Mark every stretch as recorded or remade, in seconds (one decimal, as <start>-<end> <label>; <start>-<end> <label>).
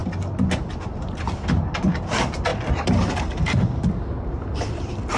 0.0-5.2 recorded